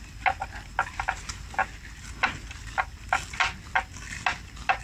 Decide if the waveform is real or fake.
real